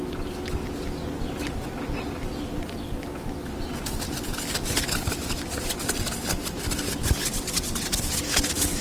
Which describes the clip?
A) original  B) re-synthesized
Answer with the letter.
A